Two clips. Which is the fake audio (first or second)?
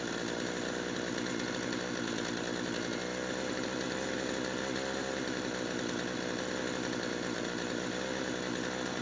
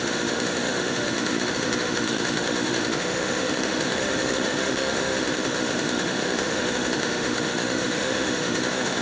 second